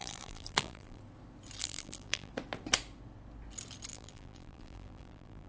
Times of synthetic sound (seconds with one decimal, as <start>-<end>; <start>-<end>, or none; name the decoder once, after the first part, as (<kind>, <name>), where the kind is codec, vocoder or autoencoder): 0.0-1.0 (vocoder, BigVGAN v2); 1.6-2.3; 3.9-5.5